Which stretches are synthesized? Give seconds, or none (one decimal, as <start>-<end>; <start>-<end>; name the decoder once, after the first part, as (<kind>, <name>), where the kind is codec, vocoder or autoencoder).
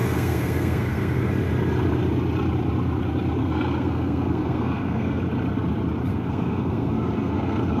0.0-1.3 (codec, SNAC); 3.4-5.2; 6.1-7.8